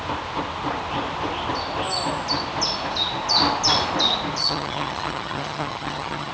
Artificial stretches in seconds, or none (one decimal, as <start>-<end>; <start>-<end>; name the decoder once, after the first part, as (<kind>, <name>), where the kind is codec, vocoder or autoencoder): 4.4-6.3 (vocoder, HiFi-GAN)

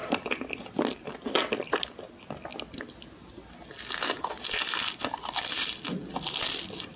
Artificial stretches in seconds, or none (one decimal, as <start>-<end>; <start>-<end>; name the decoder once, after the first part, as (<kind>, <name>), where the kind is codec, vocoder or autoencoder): none

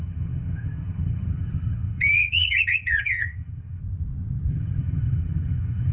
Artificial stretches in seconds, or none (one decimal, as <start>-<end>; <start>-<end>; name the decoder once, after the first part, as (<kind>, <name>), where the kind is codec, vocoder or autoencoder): 0.0-3.8 (vocoder, HiFi-GAN); 4.5-5.9

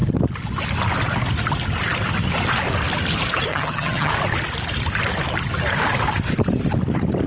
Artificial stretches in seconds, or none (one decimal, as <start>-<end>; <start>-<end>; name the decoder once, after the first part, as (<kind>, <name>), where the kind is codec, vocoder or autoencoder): 3.5-4.1 (vocoder, HiFi-GAN)